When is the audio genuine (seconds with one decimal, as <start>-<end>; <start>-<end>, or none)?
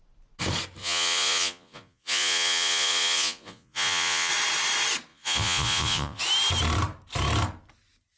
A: 0.0-0.8; 4.3-5.1; 6.2-8.2